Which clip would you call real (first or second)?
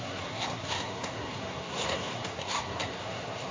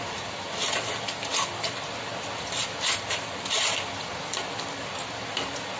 second